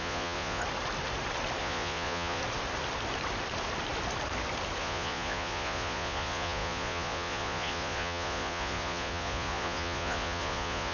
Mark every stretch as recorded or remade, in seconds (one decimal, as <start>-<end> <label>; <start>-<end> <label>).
0.0-0.6 remade; 0.6-1.6 recorded; 1.6-2.4 remade; 2.4-4.8 recorded; 4.8-10.9 remade